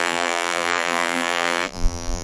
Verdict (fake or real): fake